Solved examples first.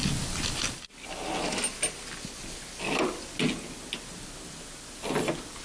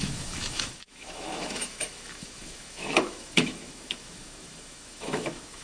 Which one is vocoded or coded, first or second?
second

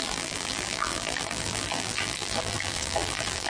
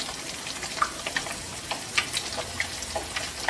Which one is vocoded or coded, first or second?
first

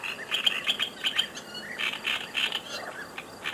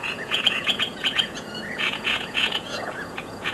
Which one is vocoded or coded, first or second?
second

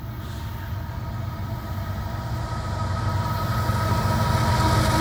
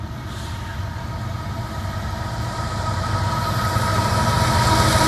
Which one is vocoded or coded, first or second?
second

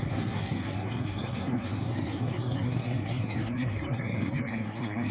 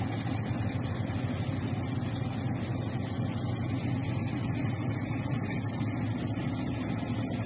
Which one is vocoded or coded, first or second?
first